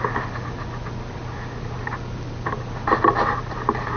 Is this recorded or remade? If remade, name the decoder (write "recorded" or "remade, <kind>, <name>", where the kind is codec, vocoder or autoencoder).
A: recorded